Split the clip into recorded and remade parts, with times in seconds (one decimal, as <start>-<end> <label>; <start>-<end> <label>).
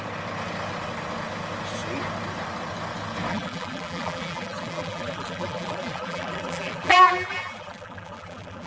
0.0-3.3 recorded; 3.3-8.7 remade